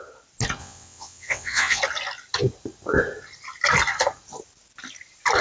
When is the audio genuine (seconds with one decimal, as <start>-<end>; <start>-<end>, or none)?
0.0-0.6; 1.8-5.4